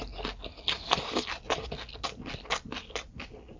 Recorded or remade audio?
recorded